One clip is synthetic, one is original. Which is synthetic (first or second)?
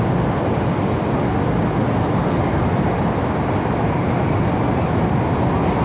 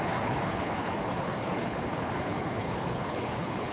second